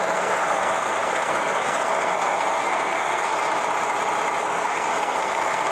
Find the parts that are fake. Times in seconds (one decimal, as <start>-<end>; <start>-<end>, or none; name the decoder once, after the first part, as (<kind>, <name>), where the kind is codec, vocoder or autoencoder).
0.0-3.3 (codec, SNAC); 4.4-5.7